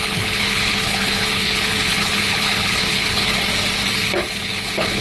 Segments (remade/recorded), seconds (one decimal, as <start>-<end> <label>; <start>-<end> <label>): 0.0-3.4 remade; 3.4-3.9 recorded; 3.9-5.0 remade

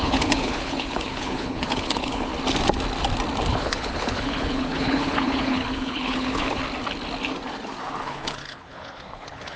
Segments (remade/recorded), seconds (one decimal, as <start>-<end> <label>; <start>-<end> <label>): 0.0-2.3 remade; 2.3-3.5 recorded; 3.5-6.6 remade; 6.6-8.0 recorded; 8.0-9.6 remade

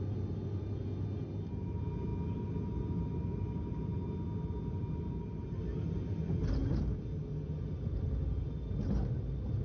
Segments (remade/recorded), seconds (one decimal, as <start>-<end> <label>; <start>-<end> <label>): 0.0-9.6 recorded

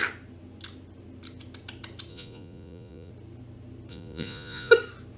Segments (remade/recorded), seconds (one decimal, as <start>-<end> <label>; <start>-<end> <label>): 0.0-2.1 recorded; 2.1-3.1 remade; 3.1-3.9 recorded; 3.9-4.7 remade; 4.7-5.2 recorded

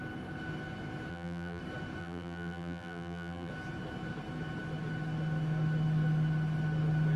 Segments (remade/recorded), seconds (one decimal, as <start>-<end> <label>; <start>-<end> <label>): 0.0-1.1 recorded; 1.1-1.6 remade; 1.6-2.0 recorded; 2.0-3.5 remade; 3.5-7.2 recorded